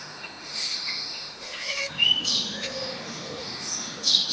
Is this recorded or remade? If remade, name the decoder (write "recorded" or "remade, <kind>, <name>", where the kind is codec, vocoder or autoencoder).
remade, autoencoder, DAC-VAE